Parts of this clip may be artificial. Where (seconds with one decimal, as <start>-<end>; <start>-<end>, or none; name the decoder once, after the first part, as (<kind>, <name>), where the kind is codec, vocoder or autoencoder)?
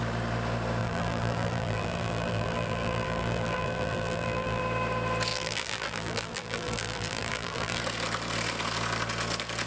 0.8-4.6 (vocoder, BigVGAN v2); 5.3-7.8